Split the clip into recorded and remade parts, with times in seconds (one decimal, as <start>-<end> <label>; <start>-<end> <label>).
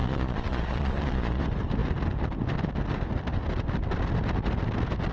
0.0-1.4 remade; 1.4-5.1 recorded